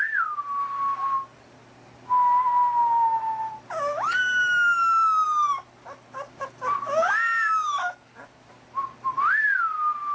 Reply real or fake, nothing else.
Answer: real